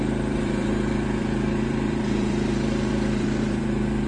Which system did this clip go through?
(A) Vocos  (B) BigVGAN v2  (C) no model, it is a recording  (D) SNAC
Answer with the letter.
B